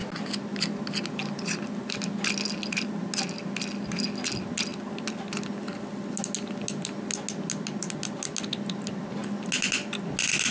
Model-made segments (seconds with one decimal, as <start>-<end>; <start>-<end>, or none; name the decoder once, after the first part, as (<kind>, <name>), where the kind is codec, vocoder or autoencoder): none